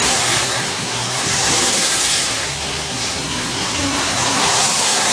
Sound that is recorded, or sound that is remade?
remade